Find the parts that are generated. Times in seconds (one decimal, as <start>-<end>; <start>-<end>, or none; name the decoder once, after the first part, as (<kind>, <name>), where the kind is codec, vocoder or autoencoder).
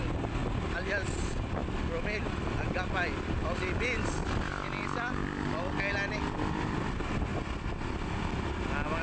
none